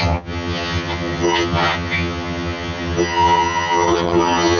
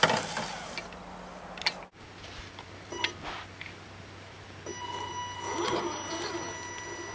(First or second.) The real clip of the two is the second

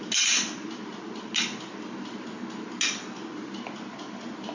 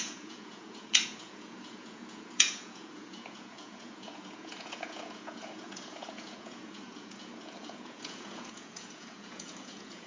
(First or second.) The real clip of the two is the first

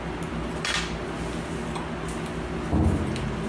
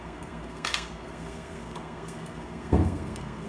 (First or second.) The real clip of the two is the first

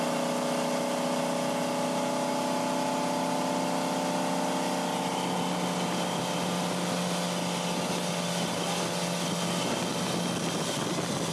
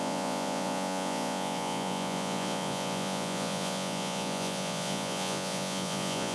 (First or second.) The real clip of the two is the first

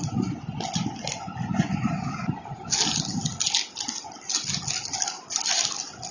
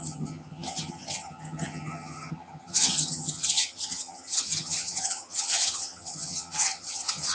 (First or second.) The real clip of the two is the first